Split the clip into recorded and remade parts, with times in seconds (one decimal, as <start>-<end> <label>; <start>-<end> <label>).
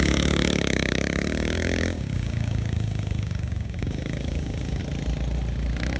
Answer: 0.0-4.8 remade; 4.8-6.0 recorded